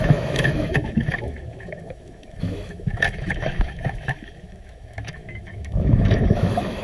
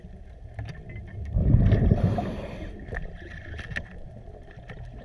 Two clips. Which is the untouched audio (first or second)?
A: second